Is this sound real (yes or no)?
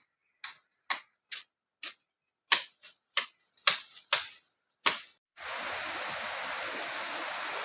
yes